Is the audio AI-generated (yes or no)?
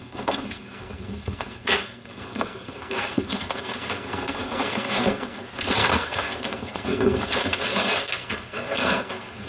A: yes